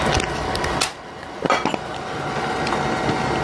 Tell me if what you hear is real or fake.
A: real